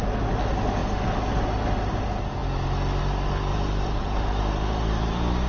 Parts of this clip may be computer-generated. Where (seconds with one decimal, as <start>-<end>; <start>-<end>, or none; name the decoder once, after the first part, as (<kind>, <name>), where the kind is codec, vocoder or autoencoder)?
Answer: 3.5-5.5 (vocoder, BigVGAN v2)